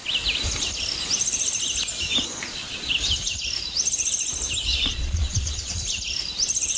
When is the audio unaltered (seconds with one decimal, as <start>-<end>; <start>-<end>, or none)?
0.0-2.3; 2.9-4.7; 5.8-6.8